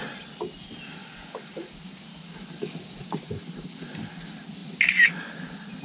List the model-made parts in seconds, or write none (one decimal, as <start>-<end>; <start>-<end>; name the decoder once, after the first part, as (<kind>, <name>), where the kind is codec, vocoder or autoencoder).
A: 1.0-1.5 (codec, DAC); 2.1-2.8